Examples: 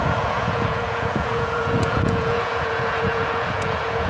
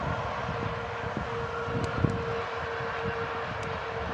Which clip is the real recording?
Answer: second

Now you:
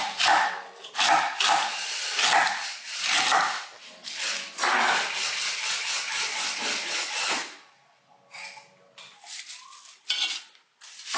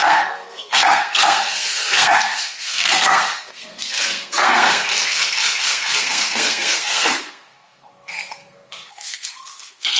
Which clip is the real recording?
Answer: first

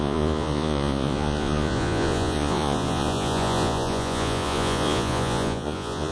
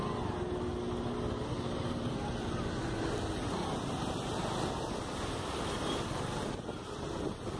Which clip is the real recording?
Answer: second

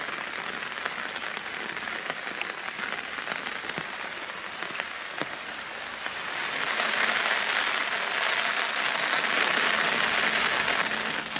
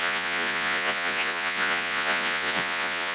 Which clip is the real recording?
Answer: first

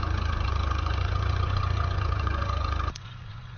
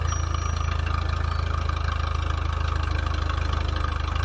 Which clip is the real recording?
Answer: second